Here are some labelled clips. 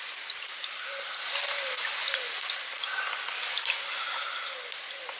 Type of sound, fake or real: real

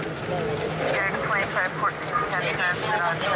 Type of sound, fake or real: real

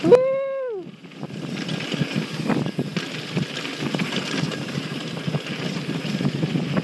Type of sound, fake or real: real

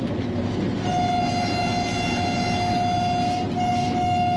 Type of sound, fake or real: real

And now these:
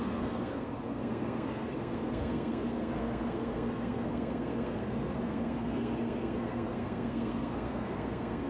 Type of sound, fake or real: fake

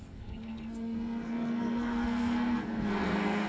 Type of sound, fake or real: fake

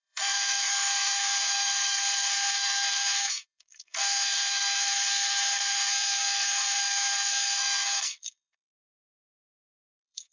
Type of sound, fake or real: fake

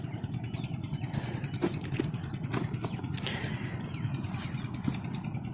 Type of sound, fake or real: real